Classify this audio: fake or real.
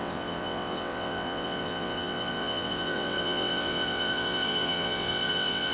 fake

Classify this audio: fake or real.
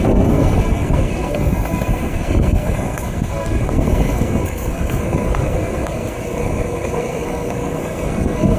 fake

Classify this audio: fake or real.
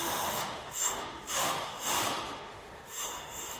fake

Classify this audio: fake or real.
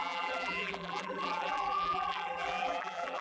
fake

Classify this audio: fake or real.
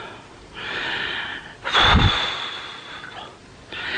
real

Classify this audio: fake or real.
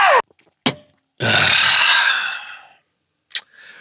real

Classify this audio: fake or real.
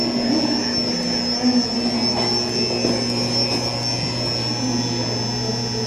real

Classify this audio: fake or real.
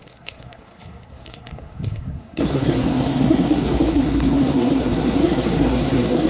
fake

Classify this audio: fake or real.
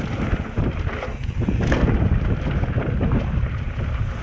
real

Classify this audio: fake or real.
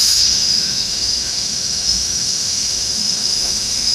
fake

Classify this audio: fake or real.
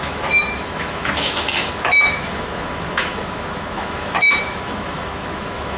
fake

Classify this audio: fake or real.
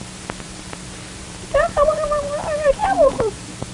fake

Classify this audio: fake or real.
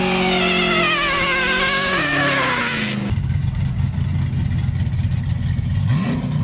real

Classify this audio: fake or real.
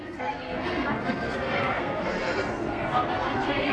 fake